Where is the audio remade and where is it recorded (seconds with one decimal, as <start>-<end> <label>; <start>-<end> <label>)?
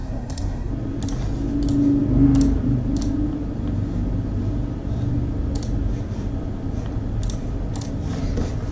0.0-0.7 remade; 0.7-8.7 recorded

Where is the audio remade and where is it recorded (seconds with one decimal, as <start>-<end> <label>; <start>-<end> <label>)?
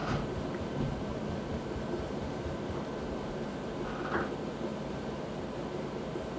0.0-3.8 remade; 3.8-4.7 recorded; 4.7-6.4 remade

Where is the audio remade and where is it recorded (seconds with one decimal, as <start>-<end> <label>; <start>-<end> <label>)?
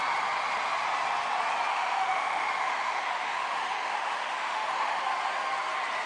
0.0-1.7 recorded; 1.7-5.0 remade; 5.0-6.1 recorded